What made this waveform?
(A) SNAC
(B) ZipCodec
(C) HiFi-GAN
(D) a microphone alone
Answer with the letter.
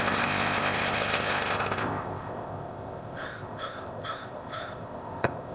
B